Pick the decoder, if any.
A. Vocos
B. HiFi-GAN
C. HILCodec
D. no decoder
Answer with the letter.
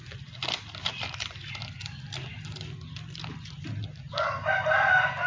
D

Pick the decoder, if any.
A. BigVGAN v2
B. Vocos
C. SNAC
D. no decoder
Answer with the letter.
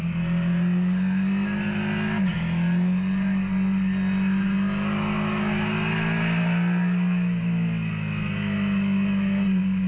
D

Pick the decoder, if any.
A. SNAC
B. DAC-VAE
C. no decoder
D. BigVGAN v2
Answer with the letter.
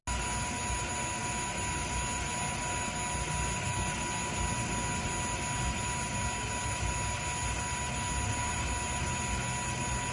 C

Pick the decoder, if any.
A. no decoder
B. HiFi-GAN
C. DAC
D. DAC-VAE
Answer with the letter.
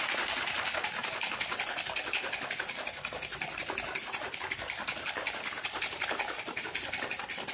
A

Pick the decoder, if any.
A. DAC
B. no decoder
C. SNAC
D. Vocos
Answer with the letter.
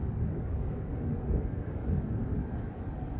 A